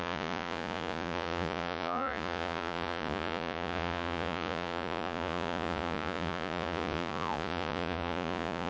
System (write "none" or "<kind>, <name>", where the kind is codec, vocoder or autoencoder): vocoder, Vocos